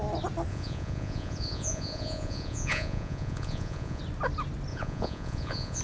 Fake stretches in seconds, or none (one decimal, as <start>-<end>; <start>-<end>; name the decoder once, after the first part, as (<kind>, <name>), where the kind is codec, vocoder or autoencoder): 0.5-4.0 (vocoder, Vocos); 4.7-5.8